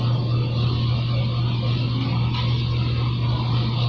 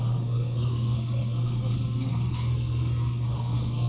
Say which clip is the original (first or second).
first